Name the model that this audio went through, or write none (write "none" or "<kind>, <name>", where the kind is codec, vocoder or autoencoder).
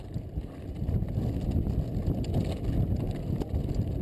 none